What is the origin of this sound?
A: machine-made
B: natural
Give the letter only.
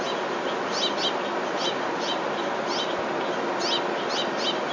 B